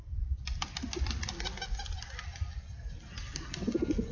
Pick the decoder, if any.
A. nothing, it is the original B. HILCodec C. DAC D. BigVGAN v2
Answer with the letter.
A